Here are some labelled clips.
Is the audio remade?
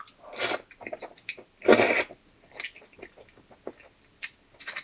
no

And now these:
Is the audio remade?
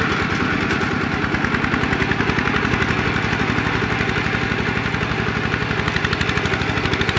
no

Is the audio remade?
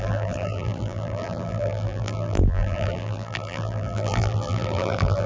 yes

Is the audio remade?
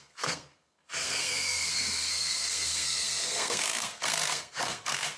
yes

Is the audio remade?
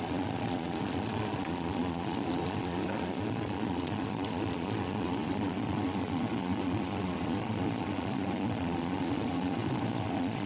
yes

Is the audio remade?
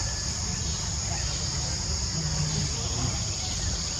no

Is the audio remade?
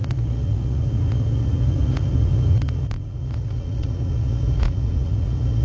yes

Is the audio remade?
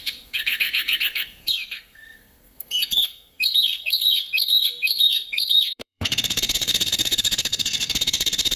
yes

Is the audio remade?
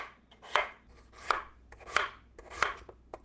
no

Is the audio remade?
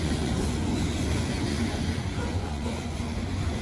yes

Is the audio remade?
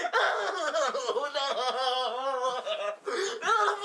no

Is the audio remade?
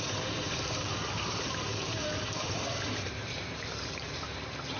yes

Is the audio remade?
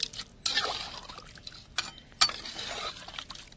no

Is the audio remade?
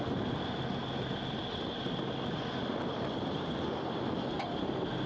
no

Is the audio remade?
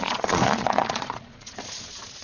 yes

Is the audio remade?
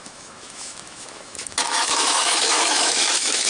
yes